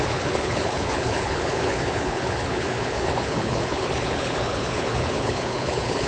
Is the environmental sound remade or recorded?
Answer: remade